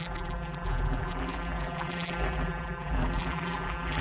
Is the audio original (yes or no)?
no